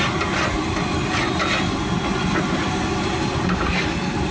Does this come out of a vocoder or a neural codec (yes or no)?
no